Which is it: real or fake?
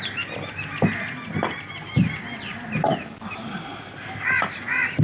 real